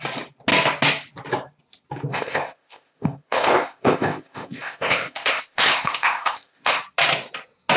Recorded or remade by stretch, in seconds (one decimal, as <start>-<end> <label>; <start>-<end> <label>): 0.0-2.1 recorded; 2.1-6.8 remade; 6.8-7.8 recorded